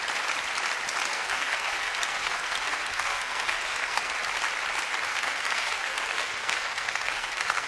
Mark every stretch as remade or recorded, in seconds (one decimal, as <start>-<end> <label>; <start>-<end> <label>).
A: 0.0-1.1 recorded; 1.1-4.1 remade; 4.1-5.1 recorded; 5.1-7.7 remade